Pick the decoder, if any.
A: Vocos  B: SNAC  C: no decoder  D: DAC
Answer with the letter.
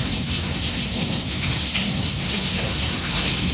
B